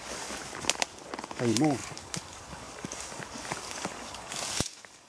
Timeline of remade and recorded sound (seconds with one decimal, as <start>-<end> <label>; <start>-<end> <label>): 0.0-0.4 remade; 0.4-1.3 recorded; 1.3-5.1 remade

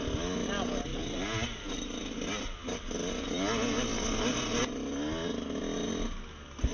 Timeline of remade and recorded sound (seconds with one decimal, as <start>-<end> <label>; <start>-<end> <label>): 0.0-6.7 recorded

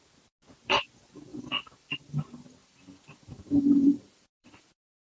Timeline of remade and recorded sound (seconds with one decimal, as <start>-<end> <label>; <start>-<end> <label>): 0.0-1.3 recorded; 1.3-2.0 remade; 2.0-2.6 recorded; 2.6-5.1 remade

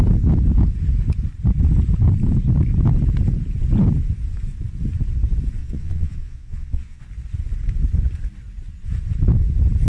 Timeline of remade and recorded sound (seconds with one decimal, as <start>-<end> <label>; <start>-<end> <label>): 0.0-5.6 recorded; 5.6-7.0 remade; 7.0-9.9 recorded